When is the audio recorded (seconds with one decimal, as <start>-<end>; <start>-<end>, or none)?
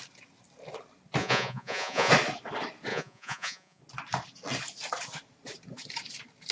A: 0.0-1.2; 2.1-2.9; 3.8-6.5